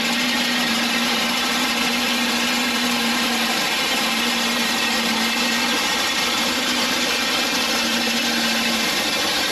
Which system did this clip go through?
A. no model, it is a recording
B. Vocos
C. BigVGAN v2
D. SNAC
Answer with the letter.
C